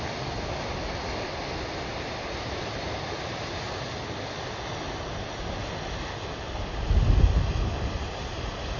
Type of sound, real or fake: real